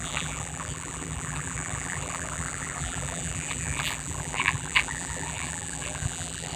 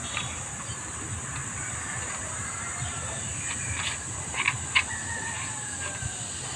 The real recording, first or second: second